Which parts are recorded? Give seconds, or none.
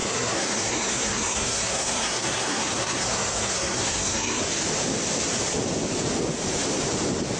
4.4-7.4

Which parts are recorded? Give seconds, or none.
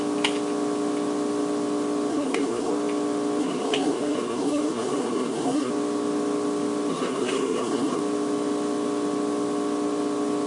0.0-2.1; 2.7-3.4; 5.7-6.9; 8.0-10.5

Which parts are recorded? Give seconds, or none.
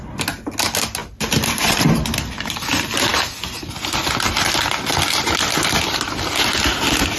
0.0-1.0; 2.0-7.2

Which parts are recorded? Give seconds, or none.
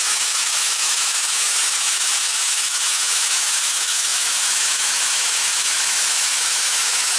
none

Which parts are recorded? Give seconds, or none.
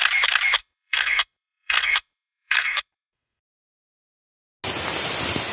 0.0-0.6; 3.7-5.5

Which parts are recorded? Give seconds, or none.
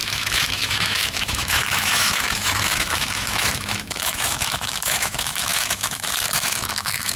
none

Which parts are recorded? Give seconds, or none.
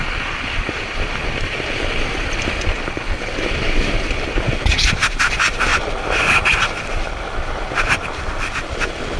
1.2-1.7; 5.7-6.8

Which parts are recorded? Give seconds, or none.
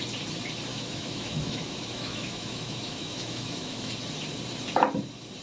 0.0-0.7; 3.9-5.4